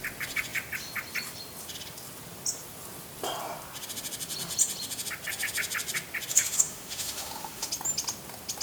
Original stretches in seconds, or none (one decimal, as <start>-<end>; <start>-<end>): 0.0-6.3; 7.7-8.6